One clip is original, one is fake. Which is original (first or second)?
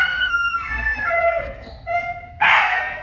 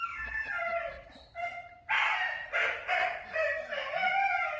second